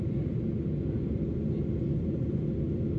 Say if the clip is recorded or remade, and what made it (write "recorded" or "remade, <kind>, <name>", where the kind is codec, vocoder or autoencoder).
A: recorded